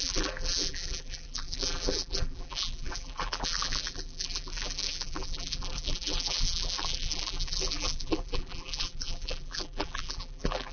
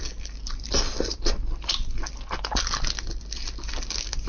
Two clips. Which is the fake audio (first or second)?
first